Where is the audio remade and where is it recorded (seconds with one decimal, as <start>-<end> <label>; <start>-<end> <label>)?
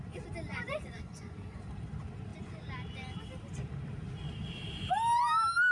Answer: 0.0-0.5 recorded; 0.5-1.7 remade; 1.7-5.7 recorded